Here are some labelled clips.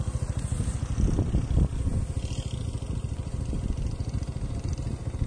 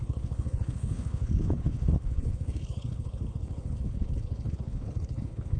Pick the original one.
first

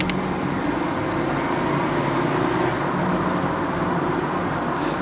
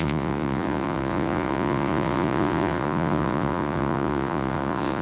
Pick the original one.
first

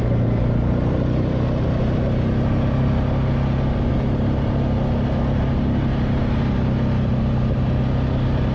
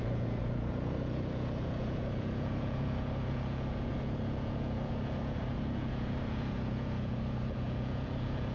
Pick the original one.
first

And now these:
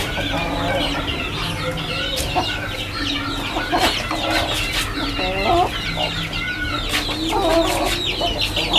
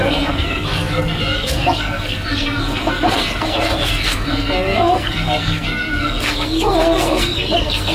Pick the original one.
first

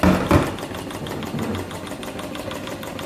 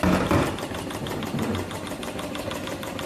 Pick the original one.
first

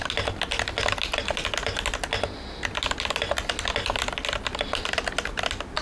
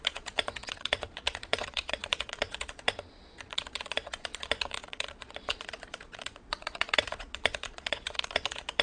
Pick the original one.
first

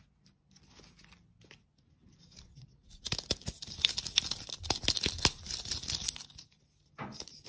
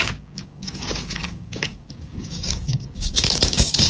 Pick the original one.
first